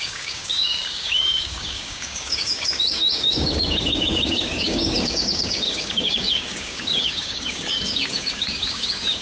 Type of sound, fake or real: fake